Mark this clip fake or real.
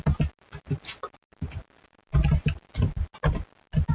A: real